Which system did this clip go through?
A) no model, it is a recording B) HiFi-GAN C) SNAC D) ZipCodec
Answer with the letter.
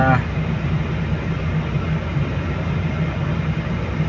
A